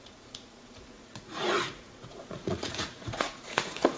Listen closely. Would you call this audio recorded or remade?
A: remade